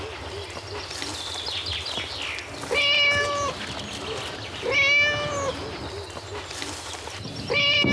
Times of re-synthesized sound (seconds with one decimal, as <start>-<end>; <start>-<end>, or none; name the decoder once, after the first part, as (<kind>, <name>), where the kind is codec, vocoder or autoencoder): none